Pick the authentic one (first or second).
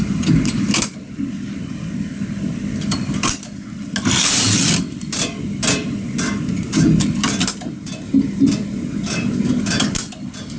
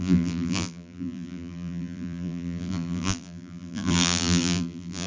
first